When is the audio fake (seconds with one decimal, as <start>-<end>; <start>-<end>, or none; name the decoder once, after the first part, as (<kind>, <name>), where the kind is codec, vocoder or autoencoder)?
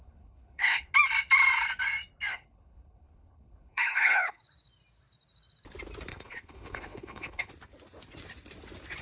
0.0-0.9 (codec, HILCodec); 2.3-4.4; 6.1-7.5